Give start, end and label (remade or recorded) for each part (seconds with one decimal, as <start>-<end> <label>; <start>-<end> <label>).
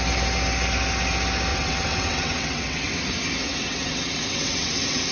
0.0-1.5 recorded; 1.5-2.9 remade; 2.9-3.4 recorded; 3.4-5.1 remade